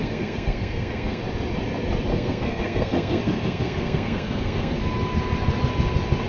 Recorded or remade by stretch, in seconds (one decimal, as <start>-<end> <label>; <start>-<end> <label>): 0.0-1.2 remade; 1.2-2.1 recorded; 2.1-4.8 remade; 4.8-6.3 recorded